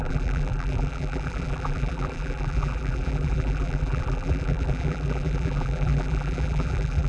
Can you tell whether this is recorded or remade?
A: remade